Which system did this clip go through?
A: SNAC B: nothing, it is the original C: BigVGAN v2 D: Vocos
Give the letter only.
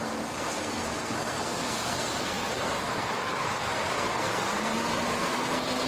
A